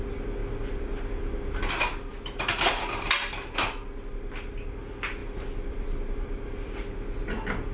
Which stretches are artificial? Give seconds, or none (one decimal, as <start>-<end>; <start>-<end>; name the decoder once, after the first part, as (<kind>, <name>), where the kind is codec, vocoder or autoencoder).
5.2-6.8 (vocoder, BigVGAN v2)